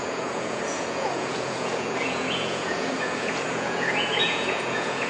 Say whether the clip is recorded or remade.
remade